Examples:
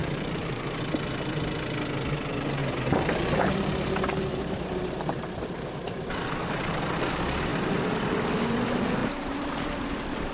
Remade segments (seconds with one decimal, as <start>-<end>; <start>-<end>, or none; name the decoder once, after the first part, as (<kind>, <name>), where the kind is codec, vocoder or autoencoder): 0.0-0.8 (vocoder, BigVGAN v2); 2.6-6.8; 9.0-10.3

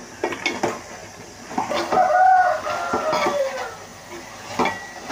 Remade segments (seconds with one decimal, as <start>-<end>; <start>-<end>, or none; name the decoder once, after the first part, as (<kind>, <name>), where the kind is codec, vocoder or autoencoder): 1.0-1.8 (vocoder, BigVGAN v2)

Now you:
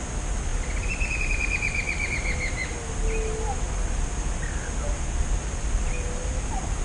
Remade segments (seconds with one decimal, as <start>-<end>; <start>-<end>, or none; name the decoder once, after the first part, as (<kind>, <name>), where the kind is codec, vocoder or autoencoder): 0.5-2.1 (vocoder, BigVGAN v2)

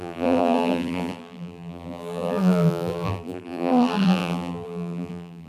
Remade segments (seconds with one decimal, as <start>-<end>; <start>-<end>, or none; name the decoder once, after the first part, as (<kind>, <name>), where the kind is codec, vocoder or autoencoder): 0.0-5.5 (vocoder, BigVGAN v2)

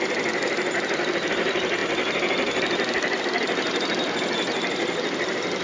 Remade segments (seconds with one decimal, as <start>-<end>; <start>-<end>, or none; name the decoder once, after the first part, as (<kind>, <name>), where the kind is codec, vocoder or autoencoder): none

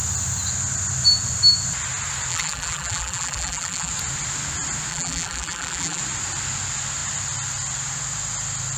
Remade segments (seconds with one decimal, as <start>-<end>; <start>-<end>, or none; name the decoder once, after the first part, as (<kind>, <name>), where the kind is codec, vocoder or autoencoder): 2.3-3.9 (vocoder, BigVGAN v2); 4.9-6.0

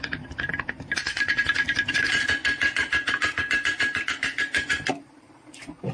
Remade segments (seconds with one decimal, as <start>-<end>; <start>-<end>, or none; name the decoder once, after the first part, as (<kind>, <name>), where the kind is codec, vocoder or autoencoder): none